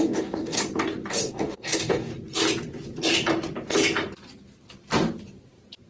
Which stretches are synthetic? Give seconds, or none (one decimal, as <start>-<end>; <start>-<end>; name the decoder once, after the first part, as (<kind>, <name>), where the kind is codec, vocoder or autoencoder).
0.0-0.6 (codec, DAC); 1.1-2.1